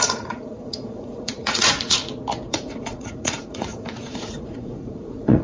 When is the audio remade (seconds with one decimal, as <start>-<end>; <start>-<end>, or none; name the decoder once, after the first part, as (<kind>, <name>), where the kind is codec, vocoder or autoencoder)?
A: 0.0-2.0 (vocoder, Vocos); 2.5-5.4